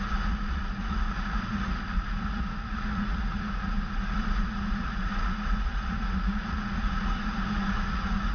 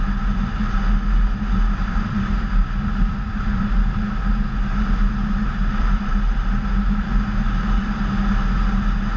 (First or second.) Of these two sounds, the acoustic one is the second